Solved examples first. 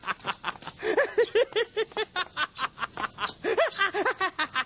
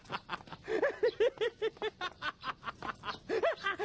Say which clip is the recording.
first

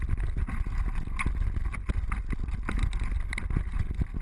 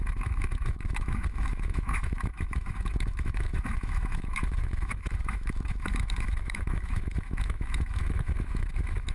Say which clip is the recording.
first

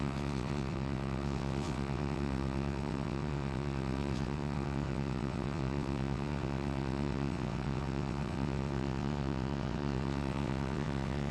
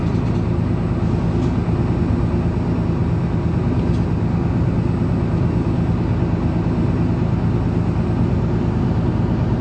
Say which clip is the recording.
second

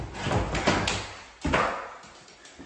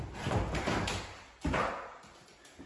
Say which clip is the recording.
first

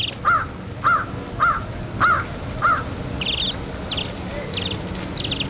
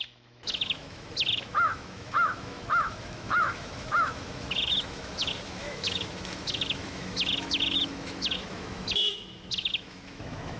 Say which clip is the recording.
first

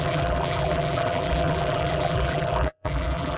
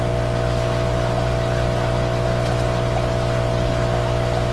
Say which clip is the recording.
second